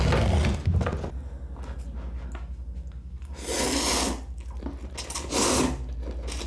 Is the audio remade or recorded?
recorded